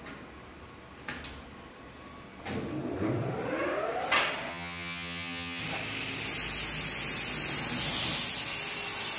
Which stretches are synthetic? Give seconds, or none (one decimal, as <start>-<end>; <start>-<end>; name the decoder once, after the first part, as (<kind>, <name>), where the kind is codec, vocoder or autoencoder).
4.5-5.6 (vocoder, HiFi-GAN)